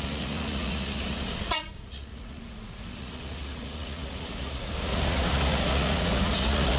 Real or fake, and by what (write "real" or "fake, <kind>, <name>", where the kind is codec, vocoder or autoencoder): fake, vocoder, Vocos